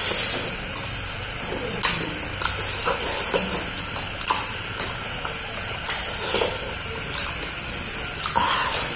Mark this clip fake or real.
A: real